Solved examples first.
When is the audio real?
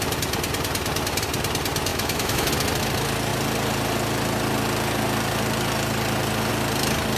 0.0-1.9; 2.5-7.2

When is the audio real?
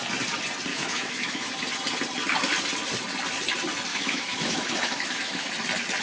0.0-0.7; 1.5-3.9; 5.5-6.0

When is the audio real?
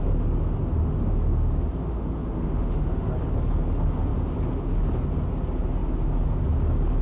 0.0-0.8; 3.1-7.0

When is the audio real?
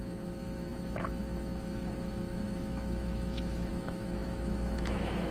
none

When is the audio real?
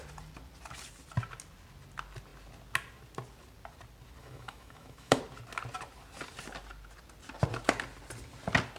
0.0-4.2; 5.2-8.8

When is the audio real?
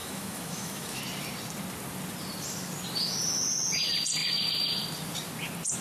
1.0-5.8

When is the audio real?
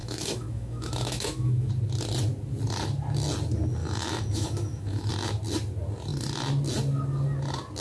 1.7-3.8; 5.1-7.8